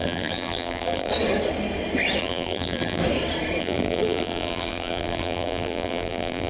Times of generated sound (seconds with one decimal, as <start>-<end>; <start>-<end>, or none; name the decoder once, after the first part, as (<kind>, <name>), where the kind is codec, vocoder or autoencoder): 0.0-1.1 (vocoder, BigVGAN v2); 2.2-3.0; 3.6-6.5